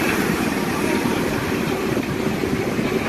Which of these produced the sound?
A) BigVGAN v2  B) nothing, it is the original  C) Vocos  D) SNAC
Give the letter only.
A